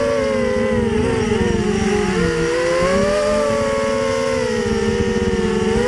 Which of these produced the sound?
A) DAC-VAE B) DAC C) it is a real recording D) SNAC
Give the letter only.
C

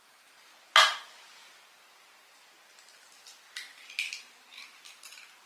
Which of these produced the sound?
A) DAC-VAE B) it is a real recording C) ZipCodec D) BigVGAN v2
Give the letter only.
B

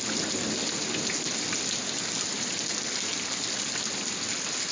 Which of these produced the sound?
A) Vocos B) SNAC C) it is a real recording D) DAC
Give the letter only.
C